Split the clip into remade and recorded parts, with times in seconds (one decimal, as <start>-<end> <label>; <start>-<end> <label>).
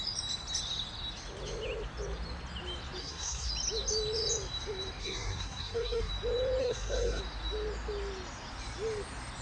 0.0-3.0 recorded; 3.0-3.5 remade; 3.5-5.0 recorded; 5.0-6.1 remade; 6.1-6.6 recorded; 6.6-7.2 remade; 7.2-9.4 recorded